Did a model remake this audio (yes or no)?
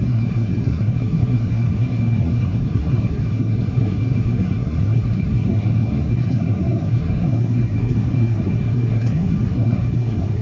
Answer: yes